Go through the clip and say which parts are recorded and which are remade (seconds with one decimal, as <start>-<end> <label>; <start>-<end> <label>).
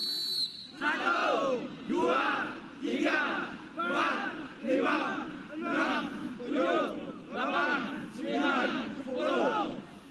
0.0-10.1 recorded